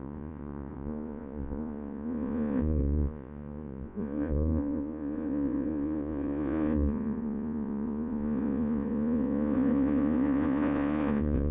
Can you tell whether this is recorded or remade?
remade